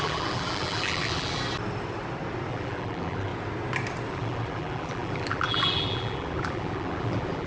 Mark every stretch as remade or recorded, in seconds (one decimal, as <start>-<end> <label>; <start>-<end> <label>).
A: 0.0-1.4 remade; 1.4-2.5 recorded; 2.5-3.3 remade; 3.3-4.1 recorded; 4.1-7.5 remade